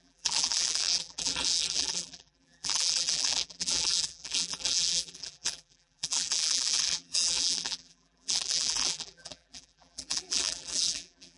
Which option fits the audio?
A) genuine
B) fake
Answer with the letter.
B